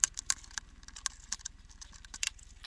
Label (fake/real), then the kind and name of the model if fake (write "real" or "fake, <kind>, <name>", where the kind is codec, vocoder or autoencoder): real